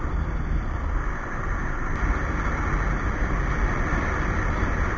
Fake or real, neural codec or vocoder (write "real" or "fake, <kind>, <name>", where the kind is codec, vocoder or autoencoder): real